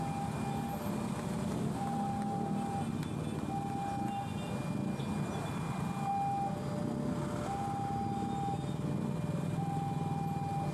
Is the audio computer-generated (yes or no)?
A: no